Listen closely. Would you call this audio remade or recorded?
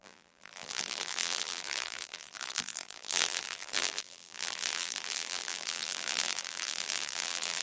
remade